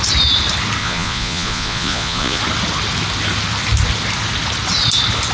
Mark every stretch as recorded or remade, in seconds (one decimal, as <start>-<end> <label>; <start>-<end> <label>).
0.0-0.8 recorded; 0.8-2.4 remade; 2.4-5.3 recorded

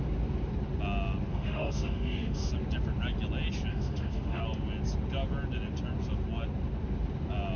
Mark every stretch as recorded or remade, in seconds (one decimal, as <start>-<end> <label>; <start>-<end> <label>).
0.0-1.3 recorded; 1.3-2.5 remade; 2.5-3.7 recorded; 3.7-4.4 remade; 4.4-7.6 recorded

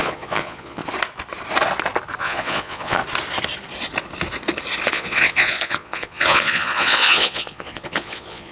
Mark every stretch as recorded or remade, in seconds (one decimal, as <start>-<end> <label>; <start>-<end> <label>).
0.0-0.8 remade; 0.8-2.2 recorded; 2.2-3.0 remade; 3.0-4.9 recorded; 4.9-8.5 remade

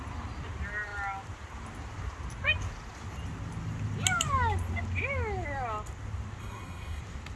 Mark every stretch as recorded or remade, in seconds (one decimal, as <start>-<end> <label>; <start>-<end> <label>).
0.0-6.4 recorded; 6.4-7.0 remade; 7.0-7.4 recorded

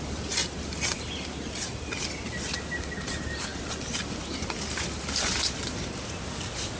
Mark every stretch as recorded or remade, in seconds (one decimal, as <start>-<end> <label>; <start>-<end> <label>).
0.0-6.8 recorded

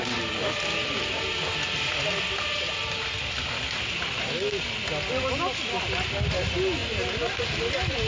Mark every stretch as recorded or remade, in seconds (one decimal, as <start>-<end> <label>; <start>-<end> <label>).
0.0-8.1 recorded

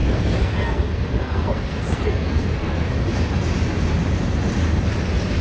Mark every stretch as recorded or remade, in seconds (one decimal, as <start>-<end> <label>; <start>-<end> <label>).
0.0-2.9 remade; 2.9-5.4 recorded

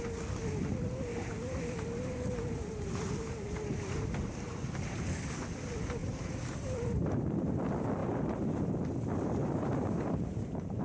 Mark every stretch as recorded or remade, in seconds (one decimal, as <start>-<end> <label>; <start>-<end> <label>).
0.0-1.1 recorded; 1.1-4.1 remade; 4.1-6.0 recorded; 6.0-7.5 remade; 7.5-8.0 recorded; 8.0-8.7 remade; 8.7-9.4 recorded; 9.4-10.8 remade